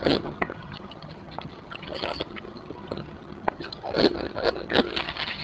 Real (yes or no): no